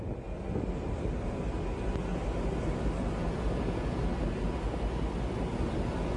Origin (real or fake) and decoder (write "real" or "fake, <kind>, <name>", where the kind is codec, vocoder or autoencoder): real